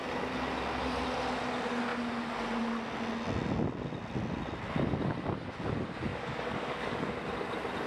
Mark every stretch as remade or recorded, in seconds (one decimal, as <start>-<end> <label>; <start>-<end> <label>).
0.0-6.1 recorded; 6.1-7.1 remade; 7.1-7.9 recorded